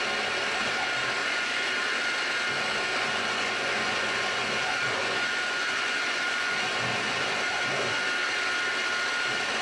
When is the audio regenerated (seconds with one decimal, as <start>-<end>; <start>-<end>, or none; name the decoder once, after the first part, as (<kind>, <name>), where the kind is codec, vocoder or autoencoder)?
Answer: 1.2-2.0 (vocoder, Vocos); 2.9-7.6